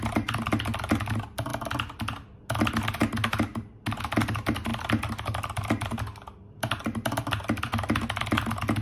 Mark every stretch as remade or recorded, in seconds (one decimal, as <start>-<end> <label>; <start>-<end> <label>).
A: 0.0-8.8 recorded